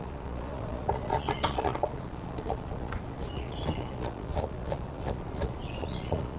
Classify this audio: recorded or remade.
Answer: remade